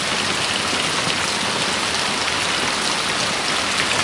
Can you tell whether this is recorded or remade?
recorded